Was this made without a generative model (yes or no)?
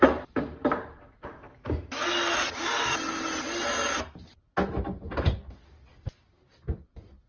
yes